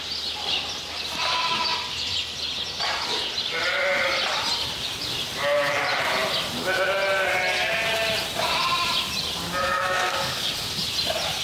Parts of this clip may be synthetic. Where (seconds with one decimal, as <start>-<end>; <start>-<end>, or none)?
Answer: 9.6-10.5